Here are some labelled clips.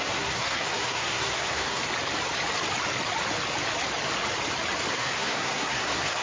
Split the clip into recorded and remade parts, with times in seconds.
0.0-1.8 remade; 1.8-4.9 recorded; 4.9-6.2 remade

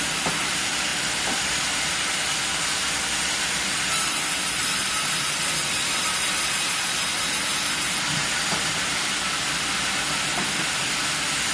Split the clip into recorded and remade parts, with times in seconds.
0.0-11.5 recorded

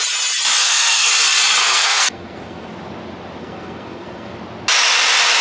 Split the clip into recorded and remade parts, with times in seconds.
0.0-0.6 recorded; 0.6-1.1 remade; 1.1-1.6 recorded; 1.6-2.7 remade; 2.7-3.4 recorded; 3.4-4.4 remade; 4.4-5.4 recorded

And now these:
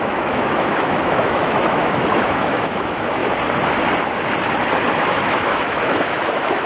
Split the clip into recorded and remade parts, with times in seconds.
0.0-3.2 remade; 3.2-4.9 recorded; 4.9-6.7 remade

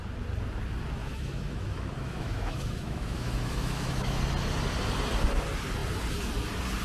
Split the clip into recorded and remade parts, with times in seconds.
0.0-1.0 recorded; 1.0-4.2 remade; 4.2-6.8 recorded

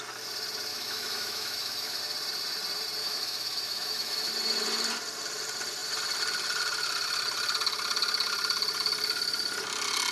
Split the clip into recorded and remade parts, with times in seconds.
0.0-0.7 recorded; 0.7-2.0 remade; 2.0-3.0 recorded; 3.0-4.3 remade; 4.3-10.1 recorded

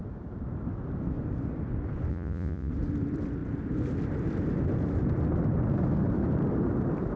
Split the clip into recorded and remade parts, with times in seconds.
0.0-2.1 recorded; 2.1-2.7 remade; 2.7-7.2 recorded